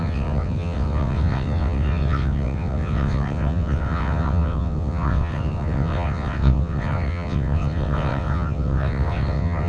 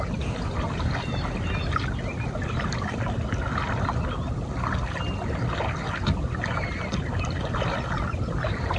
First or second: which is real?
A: second